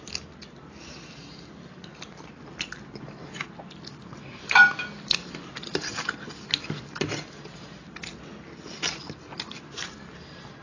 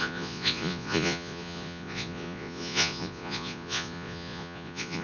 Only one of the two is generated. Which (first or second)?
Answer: second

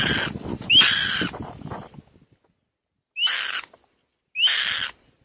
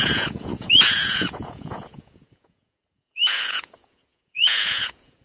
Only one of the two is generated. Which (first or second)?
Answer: second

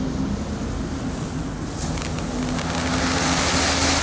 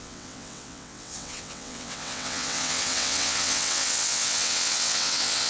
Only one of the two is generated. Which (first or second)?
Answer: second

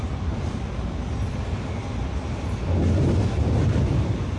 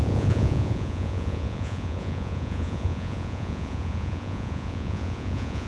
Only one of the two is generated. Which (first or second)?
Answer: second